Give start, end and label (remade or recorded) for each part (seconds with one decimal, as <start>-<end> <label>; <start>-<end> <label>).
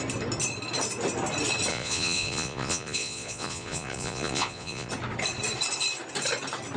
0.0-1.7 recorded; 1.7-4.9 remade; 4.9-6.8 recorded